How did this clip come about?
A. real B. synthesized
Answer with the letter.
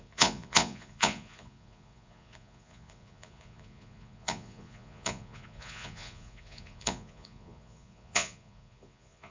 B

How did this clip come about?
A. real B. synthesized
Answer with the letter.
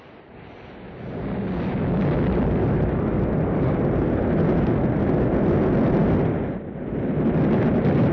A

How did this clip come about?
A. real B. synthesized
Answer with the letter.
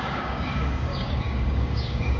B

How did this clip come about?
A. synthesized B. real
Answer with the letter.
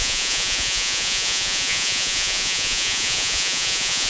A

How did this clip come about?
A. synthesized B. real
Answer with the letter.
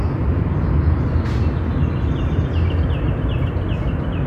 B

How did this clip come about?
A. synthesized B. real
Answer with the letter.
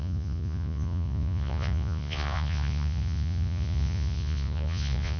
A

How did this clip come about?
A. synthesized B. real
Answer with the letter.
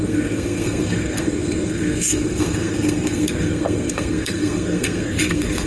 A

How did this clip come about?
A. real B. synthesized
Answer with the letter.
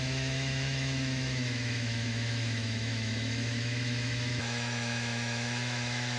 B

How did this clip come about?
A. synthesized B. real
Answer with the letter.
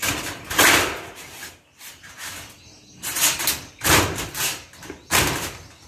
B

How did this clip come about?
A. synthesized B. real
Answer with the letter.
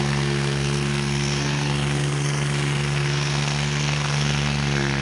A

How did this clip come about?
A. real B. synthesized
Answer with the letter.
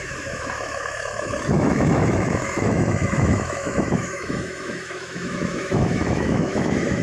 B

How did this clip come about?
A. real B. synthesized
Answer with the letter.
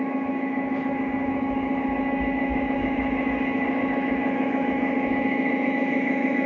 B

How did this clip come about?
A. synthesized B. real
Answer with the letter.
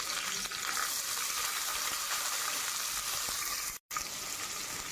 B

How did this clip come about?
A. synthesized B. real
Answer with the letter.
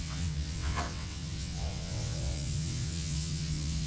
A